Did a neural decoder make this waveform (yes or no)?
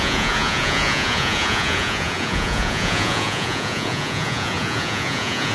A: yes